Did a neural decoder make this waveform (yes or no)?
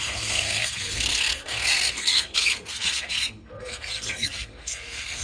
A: yes